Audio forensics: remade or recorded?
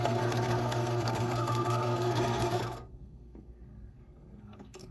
remade